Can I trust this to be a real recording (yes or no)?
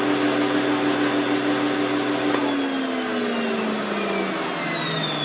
yes